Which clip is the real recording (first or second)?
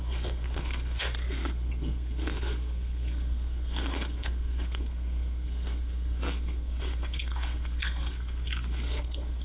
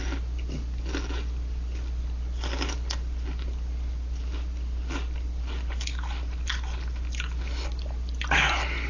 second